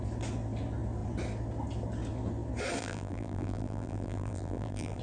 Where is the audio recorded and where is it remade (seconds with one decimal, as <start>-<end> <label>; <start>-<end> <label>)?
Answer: 0.0-2.8 recorded; 2.8-5.0 remade